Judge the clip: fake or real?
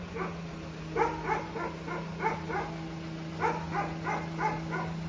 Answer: real